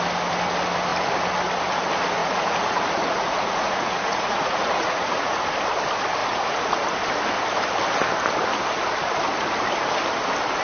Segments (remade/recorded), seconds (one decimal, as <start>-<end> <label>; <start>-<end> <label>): 0.0-2.2 recorded; 2.2-5.4 remade; 5.4-6.2 recorded; 6.2-6.8 remade; 6.8-10.6 recorded